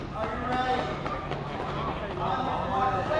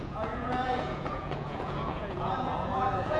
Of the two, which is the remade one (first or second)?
second